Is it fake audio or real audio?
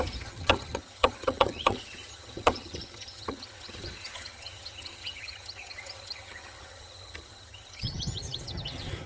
fake